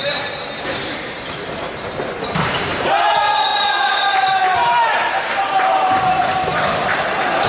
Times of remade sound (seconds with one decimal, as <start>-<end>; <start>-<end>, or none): 0.0-7.5